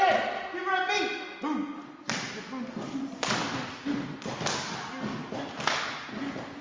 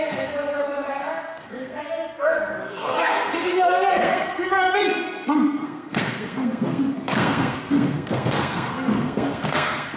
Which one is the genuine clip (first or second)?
first